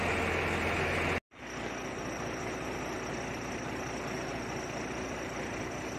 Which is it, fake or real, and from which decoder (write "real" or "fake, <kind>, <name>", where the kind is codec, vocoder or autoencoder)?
real